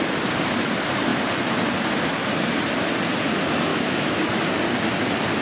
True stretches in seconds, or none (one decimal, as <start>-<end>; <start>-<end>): 0.0-3.7; 4.3-5.4